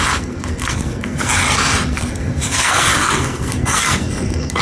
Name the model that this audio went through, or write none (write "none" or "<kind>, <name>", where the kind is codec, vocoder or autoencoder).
codec, SNAC